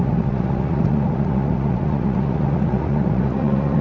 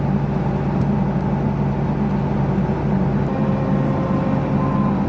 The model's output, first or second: first